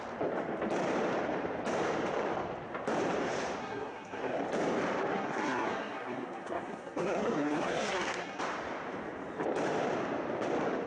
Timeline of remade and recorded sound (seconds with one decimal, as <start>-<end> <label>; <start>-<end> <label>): 0.0-3.6 recorded; 3.6-4.4 remade; 4.4-5.1 recorded; 5.1-8.4 remade; 8.4-10.9 recorded